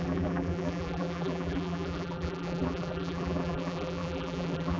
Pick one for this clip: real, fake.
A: fake